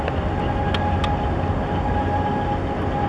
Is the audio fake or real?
real